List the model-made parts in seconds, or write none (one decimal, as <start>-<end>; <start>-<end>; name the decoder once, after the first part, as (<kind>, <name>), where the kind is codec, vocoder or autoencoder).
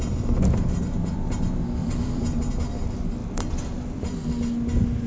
1.8-2.4 (vocoder, BigVGAN v2); 3.2-4.0